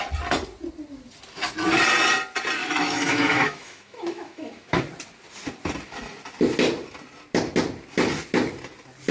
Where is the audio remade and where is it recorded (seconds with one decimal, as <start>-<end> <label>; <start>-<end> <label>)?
0.0-2.6 recorded; 2.6-4.8 remade; 4.8-9.1 recorded